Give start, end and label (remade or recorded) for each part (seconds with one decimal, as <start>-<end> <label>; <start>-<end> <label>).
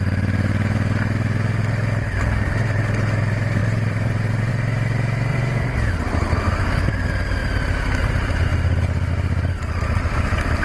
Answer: 0.0-3.6 recorded; 3.6-4.5 remade; 4.5-5.3 recorded; 5.3-5.9 remade; 5.9-10.6 recorded